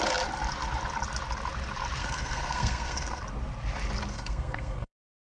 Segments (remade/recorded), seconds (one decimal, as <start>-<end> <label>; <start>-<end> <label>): 0.0-2.0 recorded; 2.0-3.2 remade; 3.2-4.1 recorded; 4.1-5.2 remade